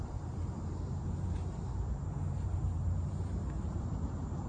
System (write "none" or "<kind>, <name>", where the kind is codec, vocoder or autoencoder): vocoder, BigVGAN v2